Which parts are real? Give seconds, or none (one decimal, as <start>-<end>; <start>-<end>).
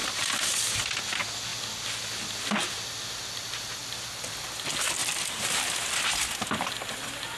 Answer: 0.0-5.0; 6.1-7.4